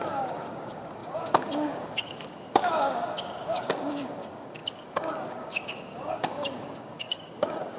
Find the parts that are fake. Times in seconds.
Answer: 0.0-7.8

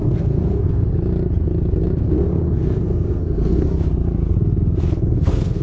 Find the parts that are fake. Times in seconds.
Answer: 0.0-0.9; 2.0-3.7; 4.8-5.6